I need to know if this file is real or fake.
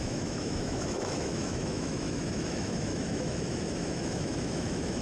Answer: fake